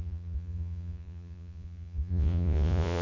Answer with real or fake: fake